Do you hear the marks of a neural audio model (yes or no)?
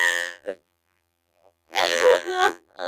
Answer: yes